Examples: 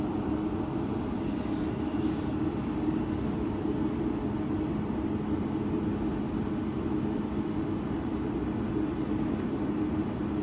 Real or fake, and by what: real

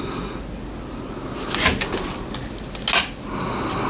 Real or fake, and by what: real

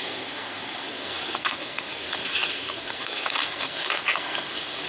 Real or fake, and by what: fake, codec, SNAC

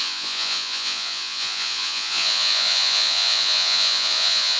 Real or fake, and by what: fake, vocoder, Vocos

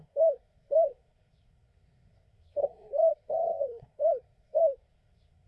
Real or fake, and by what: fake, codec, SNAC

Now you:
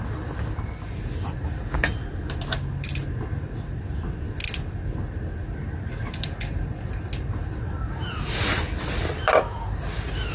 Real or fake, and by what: real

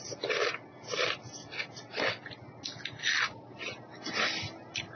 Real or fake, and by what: real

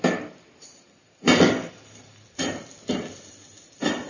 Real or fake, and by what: real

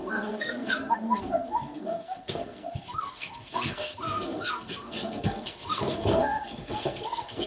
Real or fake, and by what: fake, codec, SNAC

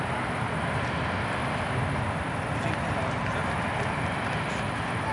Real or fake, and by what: real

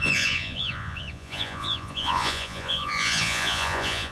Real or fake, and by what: fake, vocoder, Vocos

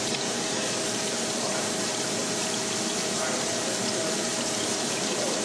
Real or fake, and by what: fake, vocoder, BigVGAN v2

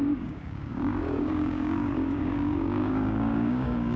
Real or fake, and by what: fake, codec, DAC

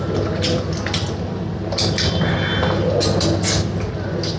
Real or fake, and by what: real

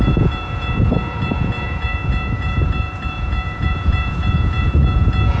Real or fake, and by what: fake, vocoder, Vocos